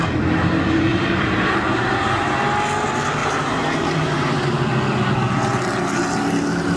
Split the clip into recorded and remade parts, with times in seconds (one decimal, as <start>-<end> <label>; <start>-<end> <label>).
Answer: 0.0-0.9 recorded; 0.9-2.3 remade; 2.3-3.2 recorded; 3.2-4.5 remade; 4.5-6.8 recorded